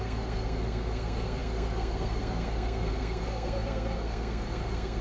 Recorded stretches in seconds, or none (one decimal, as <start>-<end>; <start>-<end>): none